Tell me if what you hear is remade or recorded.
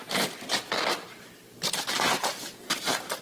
remade